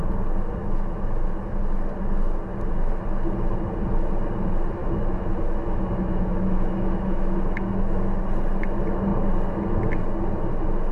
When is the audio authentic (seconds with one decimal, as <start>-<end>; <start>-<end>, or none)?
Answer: 0.0-0.6; 1.6-4.8; 8.2-10.9